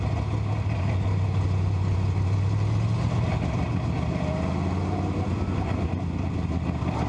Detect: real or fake real